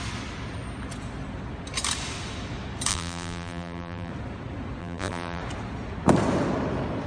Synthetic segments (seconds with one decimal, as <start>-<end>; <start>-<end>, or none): 2.9-4.1; 4.8-5.4